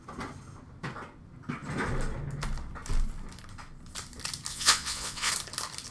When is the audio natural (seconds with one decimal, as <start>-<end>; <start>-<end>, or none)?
0.0-4.5; 5.3-5.9